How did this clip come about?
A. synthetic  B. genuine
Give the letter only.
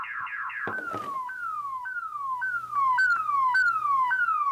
B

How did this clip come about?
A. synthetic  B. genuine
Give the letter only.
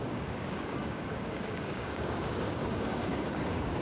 A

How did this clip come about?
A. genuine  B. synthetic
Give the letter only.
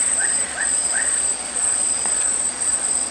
B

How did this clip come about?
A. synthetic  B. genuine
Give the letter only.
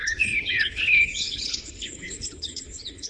A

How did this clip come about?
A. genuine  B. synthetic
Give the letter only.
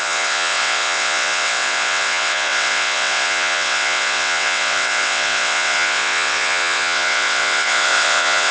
B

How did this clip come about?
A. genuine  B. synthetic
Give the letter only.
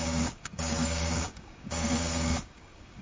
B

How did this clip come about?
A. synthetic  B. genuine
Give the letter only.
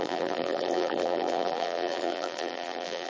A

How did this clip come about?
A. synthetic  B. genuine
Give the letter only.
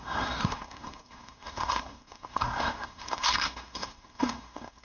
A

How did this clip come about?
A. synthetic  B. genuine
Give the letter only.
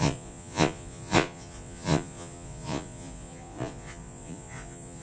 A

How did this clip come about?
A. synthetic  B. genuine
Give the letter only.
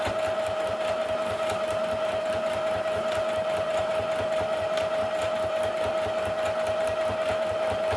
B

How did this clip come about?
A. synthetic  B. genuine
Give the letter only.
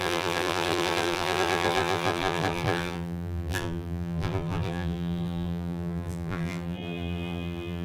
A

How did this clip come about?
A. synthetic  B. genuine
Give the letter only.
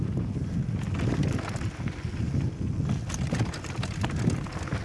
B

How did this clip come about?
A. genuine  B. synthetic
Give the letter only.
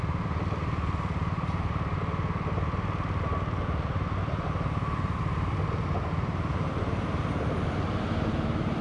A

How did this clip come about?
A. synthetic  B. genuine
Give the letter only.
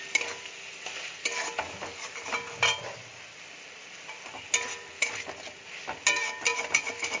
B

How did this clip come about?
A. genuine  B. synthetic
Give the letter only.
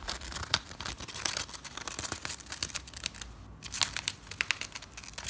A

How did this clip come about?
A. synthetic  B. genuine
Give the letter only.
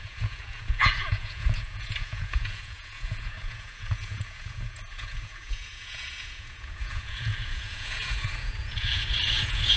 A